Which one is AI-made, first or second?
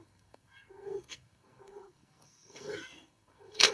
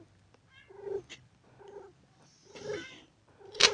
first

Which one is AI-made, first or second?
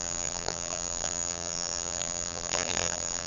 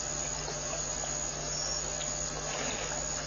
first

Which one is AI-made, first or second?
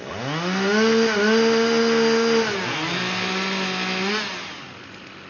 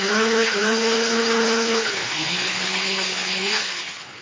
second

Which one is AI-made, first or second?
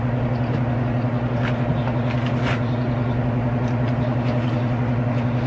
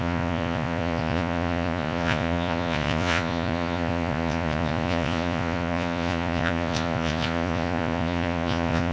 second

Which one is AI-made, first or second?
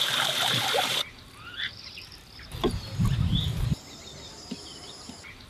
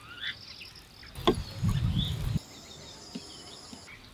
first